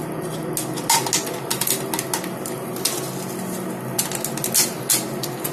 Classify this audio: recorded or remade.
recorded